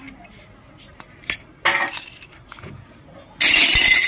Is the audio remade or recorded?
recorded